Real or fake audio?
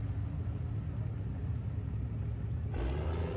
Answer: real